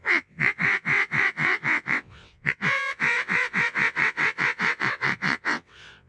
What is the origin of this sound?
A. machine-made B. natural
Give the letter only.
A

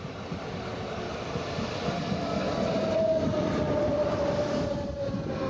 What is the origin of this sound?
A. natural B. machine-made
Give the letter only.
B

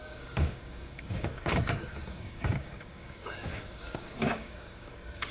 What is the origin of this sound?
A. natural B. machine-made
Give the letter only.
B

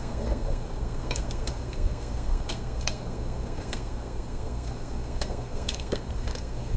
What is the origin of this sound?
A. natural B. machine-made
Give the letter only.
B